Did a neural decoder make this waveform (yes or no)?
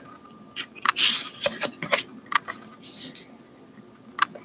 no